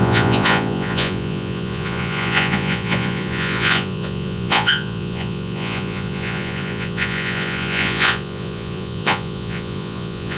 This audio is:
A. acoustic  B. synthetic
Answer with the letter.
B